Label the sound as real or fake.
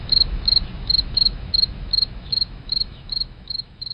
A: fake